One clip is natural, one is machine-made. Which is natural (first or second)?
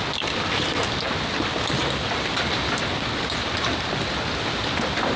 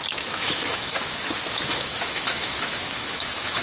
first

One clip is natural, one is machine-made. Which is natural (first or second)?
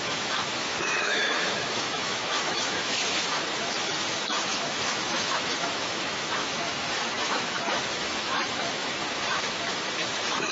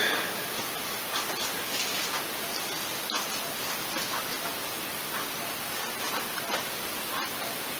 second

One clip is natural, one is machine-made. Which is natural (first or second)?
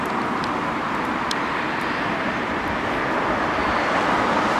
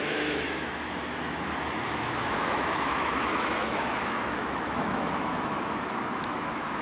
first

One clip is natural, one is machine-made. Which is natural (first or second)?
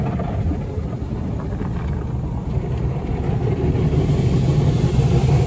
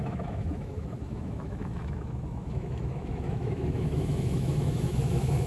first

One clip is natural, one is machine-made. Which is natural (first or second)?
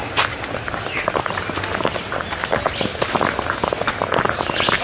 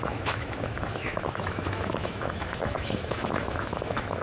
first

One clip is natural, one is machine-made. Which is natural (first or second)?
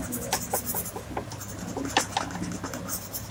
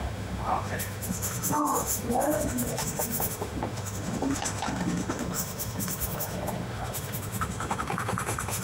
first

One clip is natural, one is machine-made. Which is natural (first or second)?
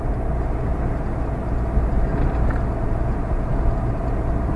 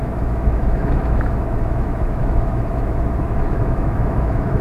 first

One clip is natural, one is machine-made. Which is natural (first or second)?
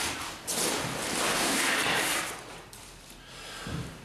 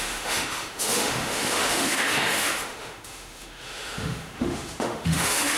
first